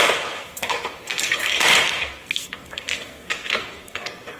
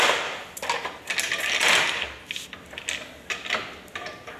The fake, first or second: first